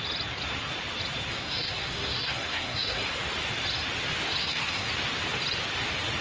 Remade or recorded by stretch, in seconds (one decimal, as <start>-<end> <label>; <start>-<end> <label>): 0.0-1.3 recorded; 1.3-3.1 remade; 3.1-4.4 recorded; 4.4-4.9 remade; 4.9-6.2 recorded